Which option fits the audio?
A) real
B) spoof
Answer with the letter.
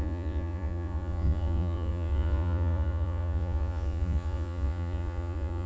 B